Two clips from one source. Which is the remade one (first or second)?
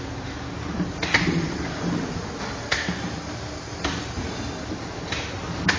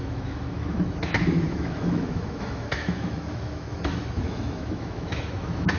second